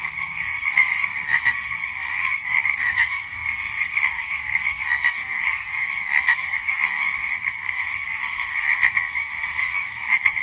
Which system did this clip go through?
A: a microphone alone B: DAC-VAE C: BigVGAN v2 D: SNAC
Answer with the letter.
D